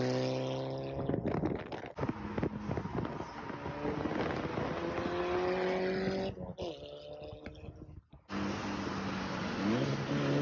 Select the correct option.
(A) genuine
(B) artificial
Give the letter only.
A